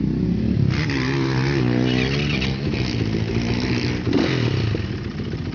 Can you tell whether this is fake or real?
real